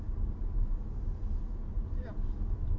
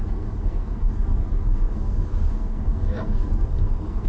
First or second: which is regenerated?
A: second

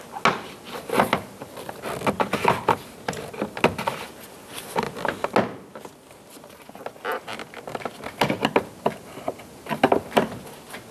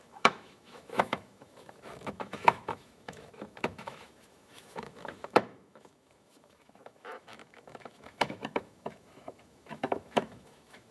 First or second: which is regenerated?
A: second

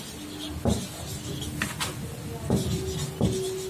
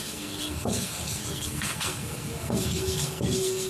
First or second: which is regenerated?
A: second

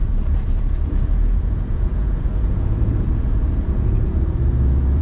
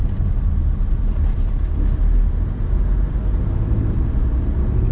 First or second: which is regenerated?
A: first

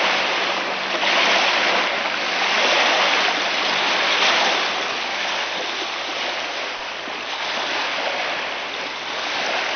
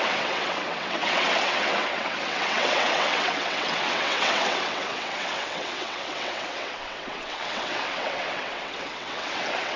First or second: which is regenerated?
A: second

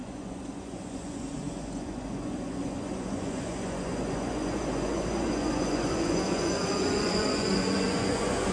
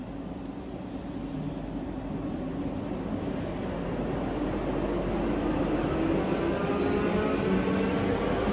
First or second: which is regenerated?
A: first